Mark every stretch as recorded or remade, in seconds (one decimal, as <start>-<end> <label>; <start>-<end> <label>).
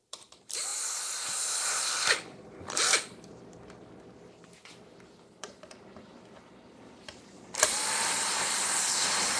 0.0-9.4 remade